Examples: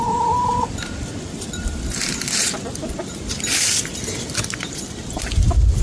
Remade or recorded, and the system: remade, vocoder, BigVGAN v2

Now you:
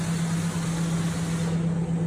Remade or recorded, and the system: recorded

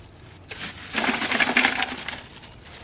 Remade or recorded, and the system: recorded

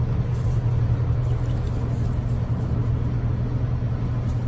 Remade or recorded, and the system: recorded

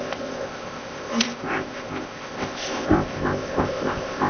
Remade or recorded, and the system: remade, codec, ZipCodec